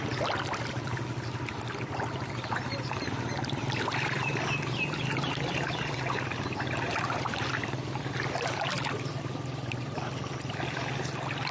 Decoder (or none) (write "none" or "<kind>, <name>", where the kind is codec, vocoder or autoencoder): none